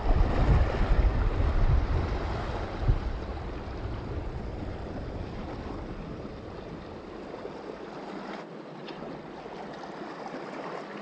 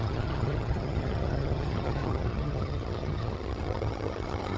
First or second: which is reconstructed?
second